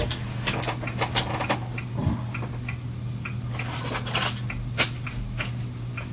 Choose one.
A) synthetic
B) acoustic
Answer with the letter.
B